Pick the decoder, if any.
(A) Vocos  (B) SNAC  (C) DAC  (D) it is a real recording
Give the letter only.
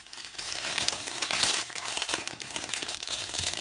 B